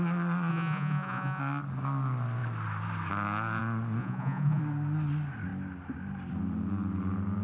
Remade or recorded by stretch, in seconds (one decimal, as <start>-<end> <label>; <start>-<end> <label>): 0.0-0.5 recorded; 0.5-1.4 remade; 1.4-4.0 recorded; 4.0-4.6 remade; 4.6-7.4 recorded

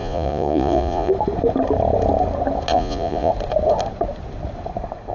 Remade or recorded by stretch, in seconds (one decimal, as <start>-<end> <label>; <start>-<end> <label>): 0.0-1.1 remade; 1.1-2.7 recorded; 2.7-3.3 remade; 3.3-5.1 recorded

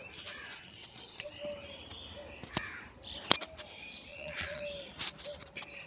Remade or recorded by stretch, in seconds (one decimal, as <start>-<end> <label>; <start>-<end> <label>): 0.0-0.5 recorded; 0.5-1.4 remade; 1.4-4.1 recorded; 4.1-4.6 remade; 4.6-5.9 recorded